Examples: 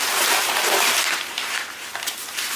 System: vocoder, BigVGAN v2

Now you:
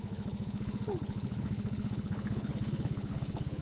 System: codec, HILCodec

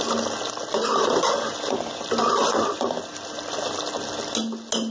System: none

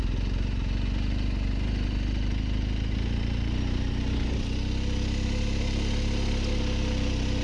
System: none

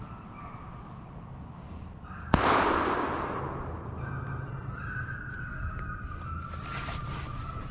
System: none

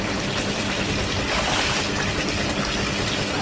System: none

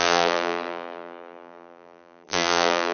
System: vocoder, BigVGAN v2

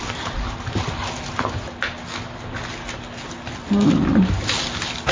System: none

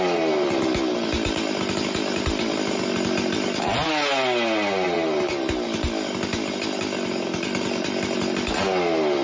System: none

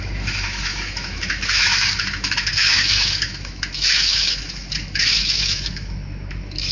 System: autoencoder, DAC-VAE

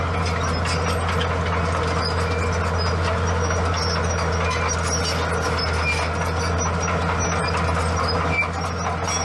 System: none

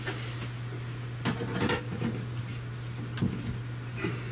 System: none